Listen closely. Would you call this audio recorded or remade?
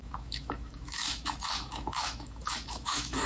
remade